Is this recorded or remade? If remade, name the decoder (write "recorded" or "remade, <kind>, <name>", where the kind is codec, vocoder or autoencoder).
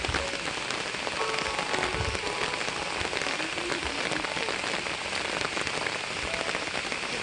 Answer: recorded